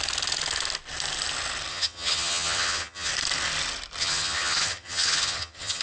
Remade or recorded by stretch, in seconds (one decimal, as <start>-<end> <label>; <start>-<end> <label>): 0.0-1.7 recorded; 1.7-3.1 remade; 3.1-4.0 recorded; 4.0-5.8 remade